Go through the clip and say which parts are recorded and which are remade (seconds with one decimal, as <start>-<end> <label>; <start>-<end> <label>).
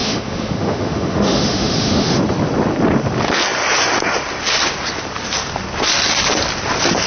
0.0-2.2 remade; 2.2-7.1 recorded